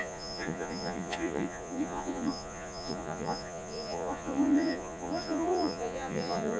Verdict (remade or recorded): remade